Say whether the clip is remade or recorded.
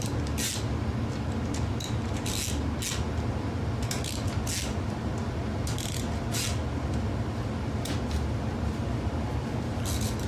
recorded